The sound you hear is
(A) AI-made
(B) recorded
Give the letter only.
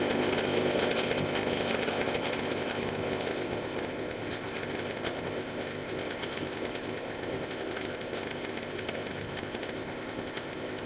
A